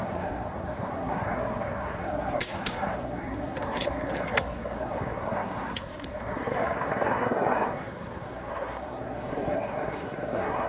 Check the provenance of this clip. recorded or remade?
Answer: remade